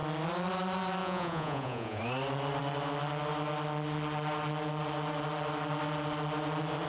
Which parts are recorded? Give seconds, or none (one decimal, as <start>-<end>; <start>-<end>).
0.0-1.0; 2.0-6.9